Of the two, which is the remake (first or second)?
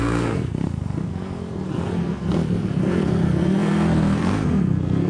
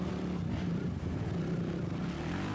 first